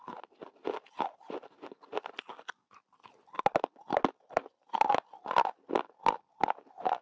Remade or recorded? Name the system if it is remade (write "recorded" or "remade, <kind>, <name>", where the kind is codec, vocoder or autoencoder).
recorded